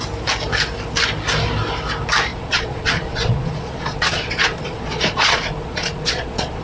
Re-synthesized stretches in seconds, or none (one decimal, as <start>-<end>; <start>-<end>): 2.3-6.6